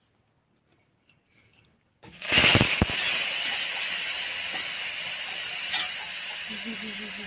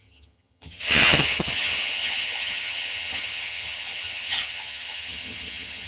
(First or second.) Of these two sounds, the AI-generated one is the second